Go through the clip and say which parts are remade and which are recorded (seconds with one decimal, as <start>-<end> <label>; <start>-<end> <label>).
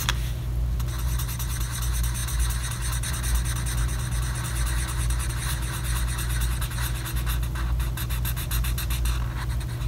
0.0-9.9 recorded